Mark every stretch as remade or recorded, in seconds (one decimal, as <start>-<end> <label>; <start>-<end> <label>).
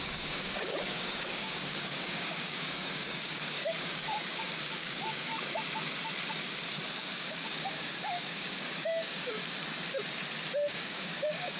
0.0-5.3 remade; 5.3-7.0 recorded; 7.0-9.4 remade; 9.4-10.7 recorded; 10.7-11.6 remade